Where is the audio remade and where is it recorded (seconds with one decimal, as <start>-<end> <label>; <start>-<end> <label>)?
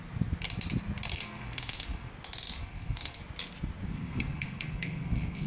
0.0-1.1 recorded; 1.1-2.1 remade; 2.1-2.6 recorded; 2.6-3.2 remade; 3.2-3.9 recorded; 3.9-5.5 remade